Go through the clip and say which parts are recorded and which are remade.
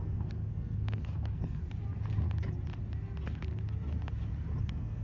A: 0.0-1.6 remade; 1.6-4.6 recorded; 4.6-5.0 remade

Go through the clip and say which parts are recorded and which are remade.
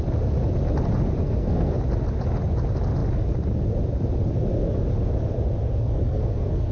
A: 0.0-1.2 recorded; 1.2-1.8 remade; 1.8-5.8 recorded; 5.8-6.7 remade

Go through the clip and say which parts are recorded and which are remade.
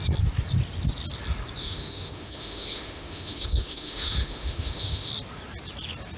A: 0.0-1.6 recorded; 1.6-5.1 remade; 5.1-6.2 recorded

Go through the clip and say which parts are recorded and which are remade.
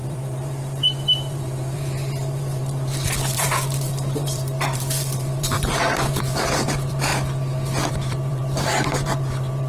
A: 0.0-7.1 remade; 7.1-7.9 recorded; 7.9-9.7 remade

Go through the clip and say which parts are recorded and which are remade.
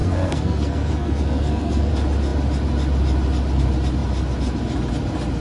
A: 0.0-1.9 remade; 1.9-5.4 recorded